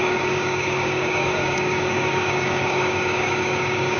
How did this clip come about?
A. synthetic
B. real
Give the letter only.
A